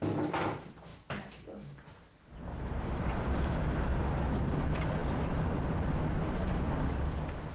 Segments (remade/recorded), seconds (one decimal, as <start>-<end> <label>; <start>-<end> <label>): 0.0-7.5 recorded